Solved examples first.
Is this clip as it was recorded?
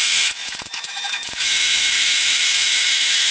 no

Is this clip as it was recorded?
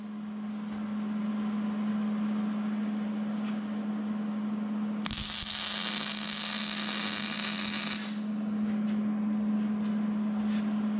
yes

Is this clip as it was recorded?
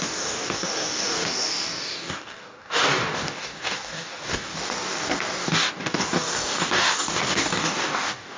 no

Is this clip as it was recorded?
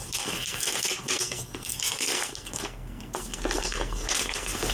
no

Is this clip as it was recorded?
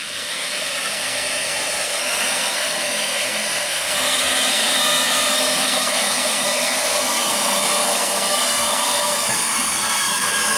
no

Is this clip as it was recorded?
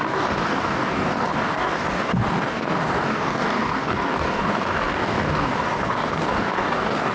no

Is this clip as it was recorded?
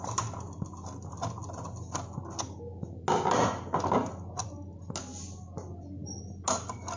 yes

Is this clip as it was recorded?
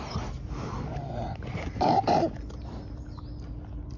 yes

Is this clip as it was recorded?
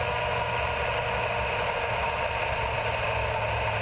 yes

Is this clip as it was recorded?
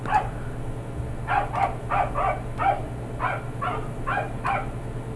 yes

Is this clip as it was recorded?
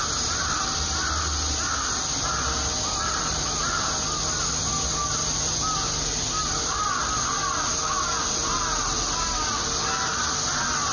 yes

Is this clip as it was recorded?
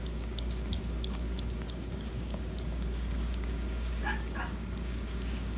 no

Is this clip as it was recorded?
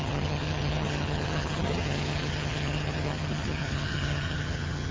no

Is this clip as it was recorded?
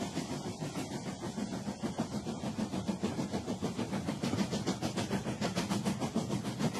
yes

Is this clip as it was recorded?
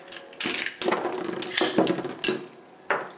yes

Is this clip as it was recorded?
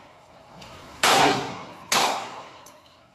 no